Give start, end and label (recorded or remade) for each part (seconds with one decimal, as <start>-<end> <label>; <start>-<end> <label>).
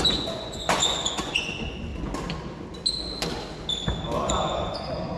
0.0-1.9 remade; 1.9-4.2 recorded; 4.2-5.2 remade